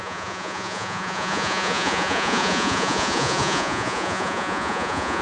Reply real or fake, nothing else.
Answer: fake